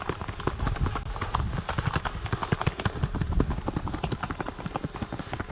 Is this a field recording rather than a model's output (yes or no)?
yes